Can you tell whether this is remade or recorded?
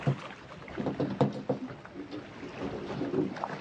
recorded